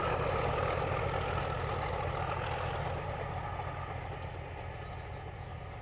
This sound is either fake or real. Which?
real